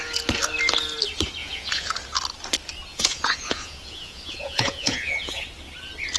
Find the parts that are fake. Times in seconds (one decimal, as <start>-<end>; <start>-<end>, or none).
1.4-1.9; 2.9-5.3